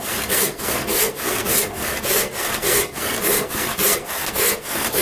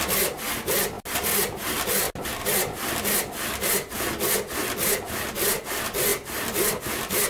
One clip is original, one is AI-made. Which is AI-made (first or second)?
first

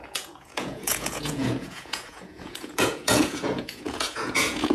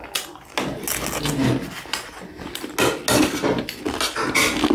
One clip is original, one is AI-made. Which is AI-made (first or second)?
first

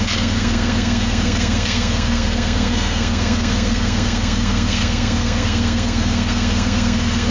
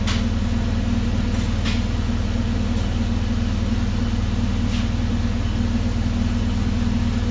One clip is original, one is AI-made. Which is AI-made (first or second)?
first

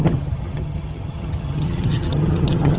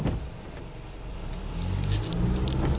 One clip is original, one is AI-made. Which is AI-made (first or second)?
first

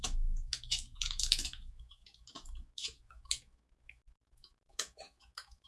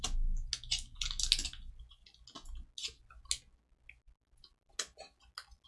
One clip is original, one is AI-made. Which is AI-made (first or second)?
first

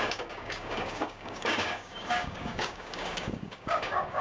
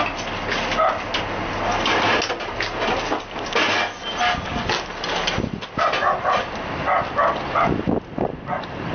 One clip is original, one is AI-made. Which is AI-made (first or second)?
first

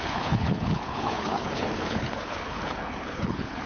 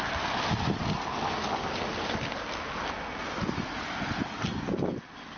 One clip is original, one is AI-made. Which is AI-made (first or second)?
first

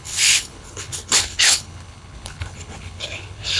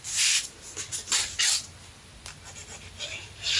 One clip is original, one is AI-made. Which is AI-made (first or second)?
first